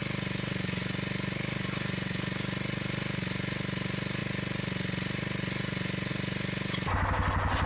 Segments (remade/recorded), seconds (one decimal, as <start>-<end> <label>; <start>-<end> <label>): 0.0-7.7 recorded